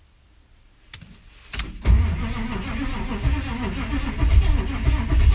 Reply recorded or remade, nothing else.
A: recorded